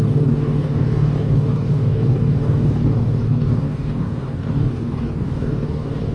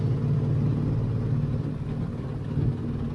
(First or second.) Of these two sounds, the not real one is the first